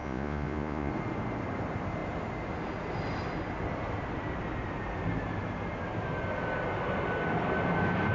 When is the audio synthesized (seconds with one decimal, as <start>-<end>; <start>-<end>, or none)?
0.0-0.9